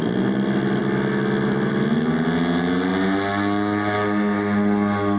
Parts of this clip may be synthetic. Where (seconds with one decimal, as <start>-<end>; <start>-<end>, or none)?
none